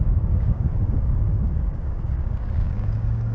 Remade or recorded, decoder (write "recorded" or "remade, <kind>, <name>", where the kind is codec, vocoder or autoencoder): remade, codec, DAC